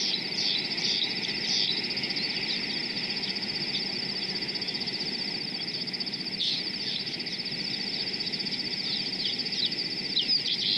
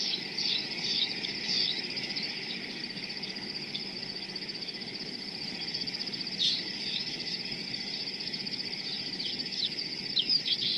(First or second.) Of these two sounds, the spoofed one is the second